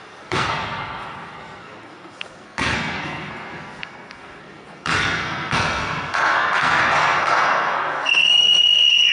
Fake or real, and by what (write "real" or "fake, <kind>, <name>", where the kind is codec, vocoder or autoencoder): fake, codec, SNAC